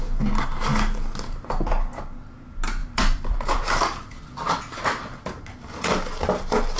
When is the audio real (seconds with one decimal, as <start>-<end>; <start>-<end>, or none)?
0.0-2.8; 4.6-6.8